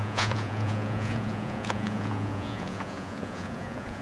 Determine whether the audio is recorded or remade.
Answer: remade